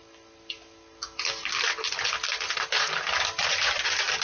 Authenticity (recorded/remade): recorded